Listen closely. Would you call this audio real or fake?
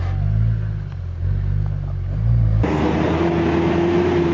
real